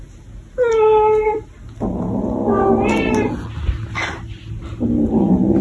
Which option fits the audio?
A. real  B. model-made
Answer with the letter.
A